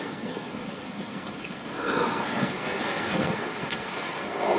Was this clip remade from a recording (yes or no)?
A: yes